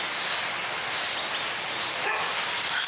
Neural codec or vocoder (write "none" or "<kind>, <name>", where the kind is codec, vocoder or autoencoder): none